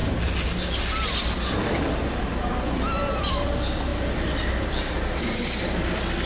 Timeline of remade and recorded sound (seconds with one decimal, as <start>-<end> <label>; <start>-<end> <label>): 0.0-3.9 recorded; 3.9-5.2 remade; 5.2-6.3 recorded